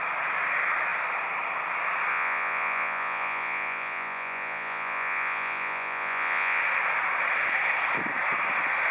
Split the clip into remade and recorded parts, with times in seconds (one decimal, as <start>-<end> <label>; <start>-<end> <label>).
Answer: 0.0-2.1 recorded; 2.1-6.6 remade; 6.6-8.9 recorded